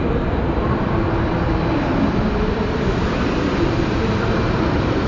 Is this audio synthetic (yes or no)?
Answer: yes